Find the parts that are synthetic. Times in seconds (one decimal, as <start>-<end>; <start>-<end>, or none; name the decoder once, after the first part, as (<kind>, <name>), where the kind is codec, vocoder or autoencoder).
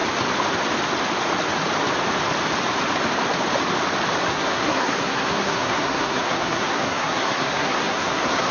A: 4.3-8.5 (codec, SNAC)